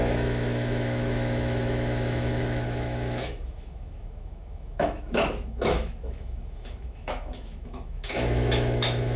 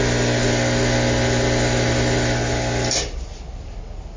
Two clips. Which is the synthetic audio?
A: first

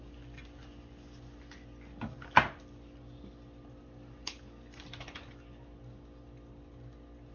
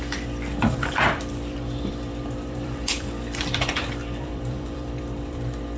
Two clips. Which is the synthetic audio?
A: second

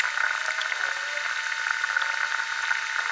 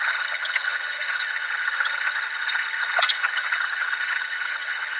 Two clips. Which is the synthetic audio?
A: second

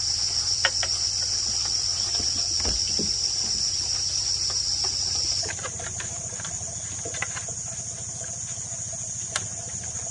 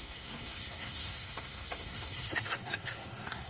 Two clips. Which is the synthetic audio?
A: second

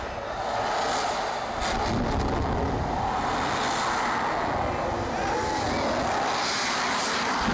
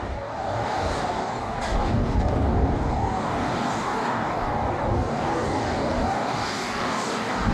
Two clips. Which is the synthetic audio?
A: second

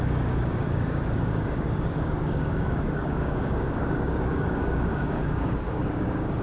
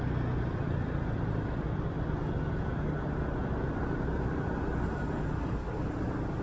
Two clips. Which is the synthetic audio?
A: first